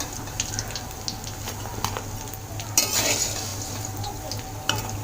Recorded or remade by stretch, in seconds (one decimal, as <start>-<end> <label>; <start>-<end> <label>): 0.0-5.0 recorded